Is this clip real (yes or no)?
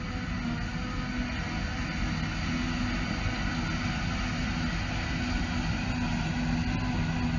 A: yes